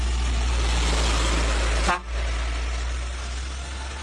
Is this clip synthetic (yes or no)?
no